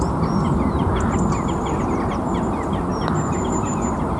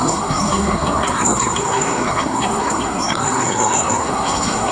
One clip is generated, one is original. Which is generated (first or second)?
second